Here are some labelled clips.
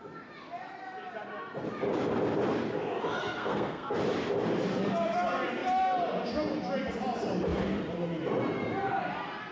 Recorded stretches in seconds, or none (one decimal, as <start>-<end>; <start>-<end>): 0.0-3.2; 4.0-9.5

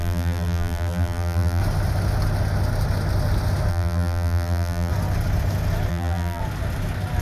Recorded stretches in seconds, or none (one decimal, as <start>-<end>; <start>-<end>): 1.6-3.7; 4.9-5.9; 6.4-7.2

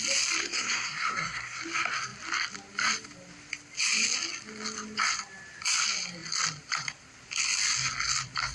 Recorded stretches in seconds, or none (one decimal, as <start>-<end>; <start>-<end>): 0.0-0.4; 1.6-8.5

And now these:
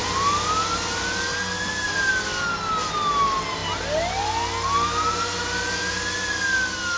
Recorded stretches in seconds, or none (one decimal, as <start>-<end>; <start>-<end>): 0.0-7.0

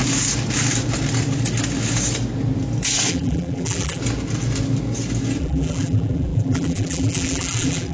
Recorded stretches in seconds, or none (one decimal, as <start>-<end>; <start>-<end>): 0.0-3.1; 4.0-5.4